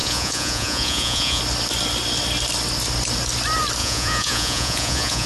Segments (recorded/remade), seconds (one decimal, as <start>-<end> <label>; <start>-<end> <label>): 0.0-1.4 remade; 1.4-3.8 recorded; 3.8-5.3 remade